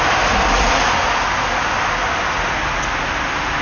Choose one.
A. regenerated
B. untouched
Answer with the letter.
B